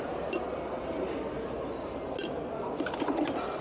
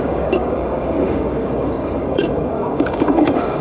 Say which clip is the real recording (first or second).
first